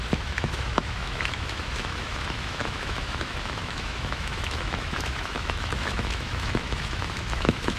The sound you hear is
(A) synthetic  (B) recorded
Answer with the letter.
A